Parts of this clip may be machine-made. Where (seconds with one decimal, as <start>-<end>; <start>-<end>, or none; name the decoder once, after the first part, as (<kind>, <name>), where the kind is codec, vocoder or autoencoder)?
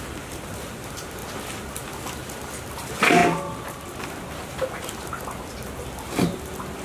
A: none